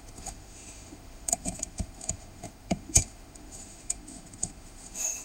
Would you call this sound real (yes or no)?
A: no